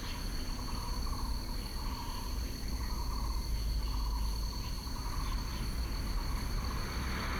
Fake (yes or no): no